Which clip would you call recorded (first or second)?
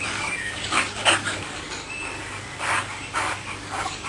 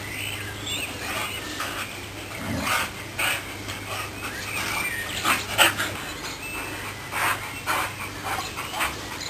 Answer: second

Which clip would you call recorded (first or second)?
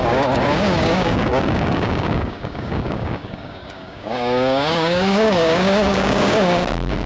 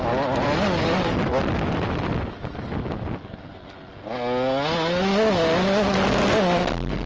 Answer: second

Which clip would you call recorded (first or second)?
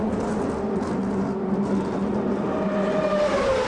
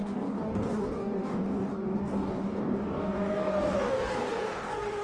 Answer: first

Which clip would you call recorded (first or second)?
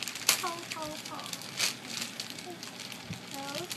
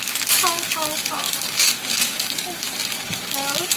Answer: first